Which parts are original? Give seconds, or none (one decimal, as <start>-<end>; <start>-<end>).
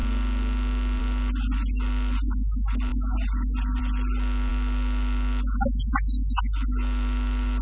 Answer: 0.0-7.6